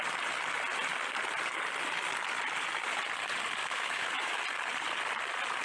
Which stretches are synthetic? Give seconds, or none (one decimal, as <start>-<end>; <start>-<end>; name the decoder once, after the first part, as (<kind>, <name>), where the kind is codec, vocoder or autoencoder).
3.6-4.4 (autoencoder, DAC-VAE)

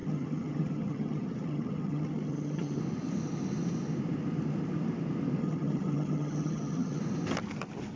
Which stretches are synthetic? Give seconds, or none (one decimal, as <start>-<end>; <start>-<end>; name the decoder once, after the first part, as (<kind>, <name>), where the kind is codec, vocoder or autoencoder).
0.0-2.8 (vocoder, HiFi-GAN); 5.4-7.0